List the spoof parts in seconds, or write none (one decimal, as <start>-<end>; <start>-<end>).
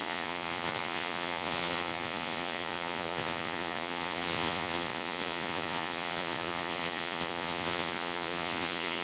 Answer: 0.0-9.0